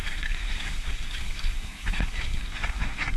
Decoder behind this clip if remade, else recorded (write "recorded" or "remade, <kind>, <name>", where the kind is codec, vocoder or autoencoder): remade, codec, SNAC